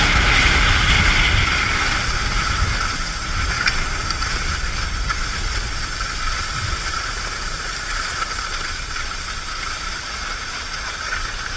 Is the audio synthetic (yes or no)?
yes